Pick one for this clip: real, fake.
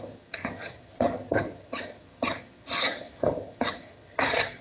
fake